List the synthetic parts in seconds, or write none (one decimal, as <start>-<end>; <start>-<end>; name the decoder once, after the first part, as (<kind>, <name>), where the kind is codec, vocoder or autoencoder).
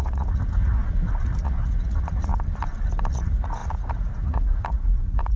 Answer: 0.0-2.3 (vocoder, Vocos); 3.1-5.4